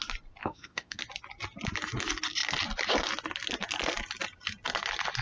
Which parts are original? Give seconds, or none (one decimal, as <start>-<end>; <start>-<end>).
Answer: 0.0-0.4; 1.0-5.2